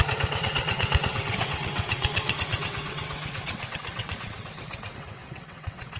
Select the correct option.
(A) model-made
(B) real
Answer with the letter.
A